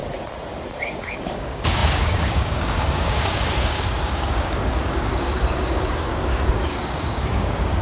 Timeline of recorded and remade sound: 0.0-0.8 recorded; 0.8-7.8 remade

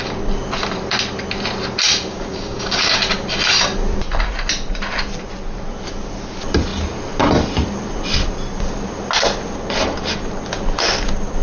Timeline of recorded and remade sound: 0.0-2.1 recorded; 2.1-3.0 remade; 3.0-11.4 recorded

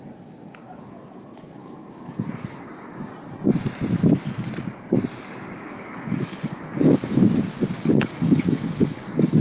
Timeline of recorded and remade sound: 0.0-3.1 remade; 3.1-5.7 recorded; 5.7-7.2 remade; 7.2-7.8 recorded; 7.8-9.4 remade